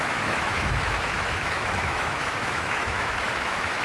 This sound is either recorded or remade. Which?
remade